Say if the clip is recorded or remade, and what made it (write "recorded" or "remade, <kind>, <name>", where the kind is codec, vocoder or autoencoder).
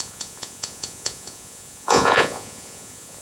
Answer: remade, vocoder, Vocos